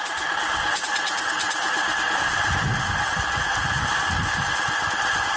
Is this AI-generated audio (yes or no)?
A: no